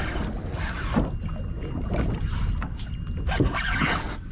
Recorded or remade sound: recorded